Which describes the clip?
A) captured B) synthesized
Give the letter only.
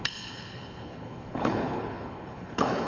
B